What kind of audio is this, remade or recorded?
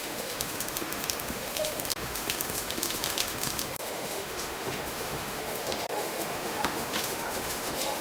remade